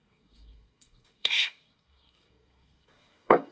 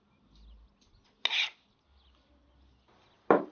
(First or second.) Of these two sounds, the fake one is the first